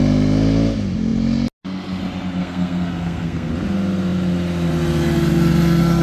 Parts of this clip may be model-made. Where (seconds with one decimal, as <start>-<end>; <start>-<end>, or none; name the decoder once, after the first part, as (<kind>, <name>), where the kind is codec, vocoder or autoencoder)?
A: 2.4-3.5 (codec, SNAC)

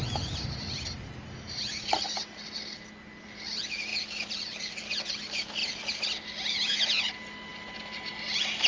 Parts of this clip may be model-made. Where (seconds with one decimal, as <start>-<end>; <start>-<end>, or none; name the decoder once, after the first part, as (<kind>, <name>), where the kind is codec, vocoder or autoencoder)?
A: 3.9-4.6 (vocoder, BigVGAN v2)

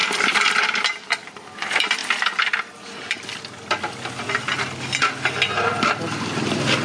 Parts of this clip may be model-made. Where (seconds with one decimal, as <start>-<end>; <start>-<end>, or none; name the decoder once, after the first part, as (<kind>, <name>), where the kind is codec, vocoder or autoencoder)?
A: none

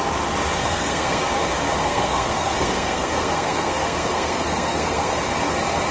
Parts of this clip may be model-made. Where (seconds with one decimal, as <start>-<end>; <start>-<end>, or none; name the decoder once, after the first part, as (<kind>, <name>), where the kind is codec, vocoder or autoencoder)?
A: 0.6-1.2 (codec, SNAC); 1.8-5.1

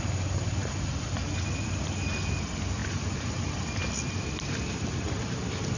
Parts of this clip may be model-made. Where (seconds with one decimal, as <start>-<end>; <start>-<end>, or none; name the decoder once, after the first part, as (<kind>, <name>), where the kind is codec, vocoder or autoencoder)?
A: 2.8-5.8 (vocoder, BigVGAN v2)